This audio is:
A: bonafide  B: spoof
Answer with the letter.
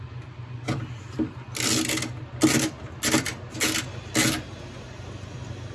A